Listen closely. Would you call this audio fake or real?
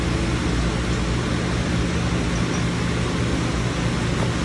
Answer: real